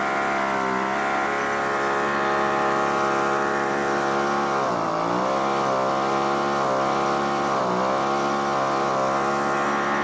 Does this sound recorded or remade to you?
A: recorded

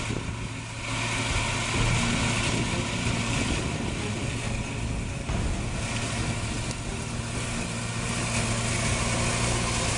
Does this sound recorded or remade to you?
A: recorded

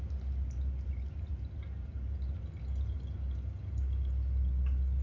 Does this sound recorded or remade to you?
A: recorded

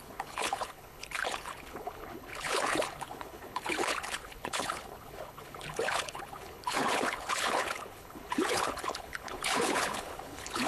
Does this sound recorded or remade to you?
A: remade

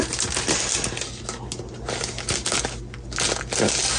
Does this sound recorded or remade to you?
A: recorded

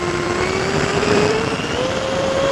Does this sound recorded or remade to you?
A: remade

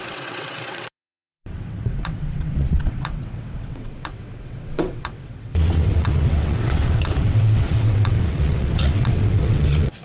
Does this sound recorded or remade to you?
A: remade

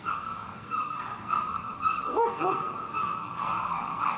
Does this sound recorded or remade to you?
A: remade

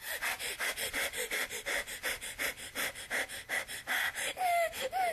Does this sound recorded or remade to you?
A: recorded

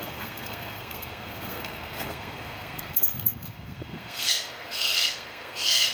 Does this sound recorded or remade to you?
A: remade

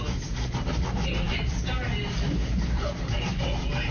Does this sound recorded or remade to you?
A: recorded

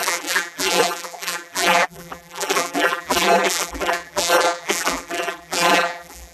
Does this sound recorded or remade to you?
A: remade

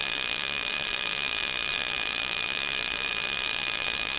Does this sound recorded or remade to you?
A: remade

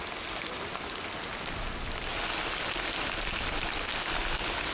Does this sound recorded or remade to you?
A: recorded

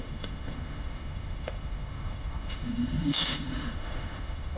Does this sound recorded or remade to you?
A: remade